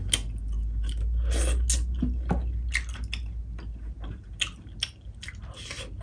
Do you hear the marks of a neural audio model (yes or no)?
no